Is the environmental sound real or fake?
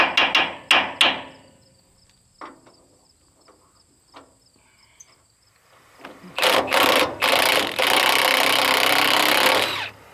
real